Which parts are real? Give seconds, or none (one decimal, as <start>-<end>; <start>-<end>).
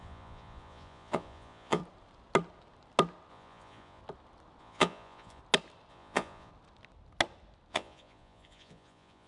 1.8-3.3; 4.0-4.6; 5.4-5.9; 6.5-7.7